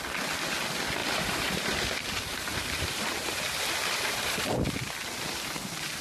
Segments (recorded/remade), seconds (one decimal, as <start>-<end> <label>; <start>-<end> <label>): 0.0-1.0 recorded; 1.0-4.6 remade; 4.6-6.0 recorded